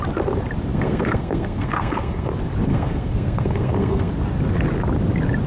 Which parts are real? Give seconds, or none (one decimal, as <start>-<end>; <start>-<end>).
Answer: 0.0-0.7; 2.3-2.7; 4.1-5.5